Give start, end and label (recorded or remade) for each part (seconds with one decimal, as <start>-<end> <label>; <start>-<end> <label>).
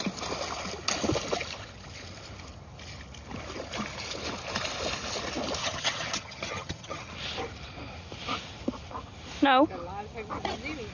0.0-5.6 recorded; 5.6-7.1 remade; 7.1-10.9 recorded